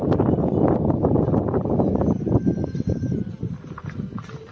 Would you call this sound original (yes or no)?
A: yes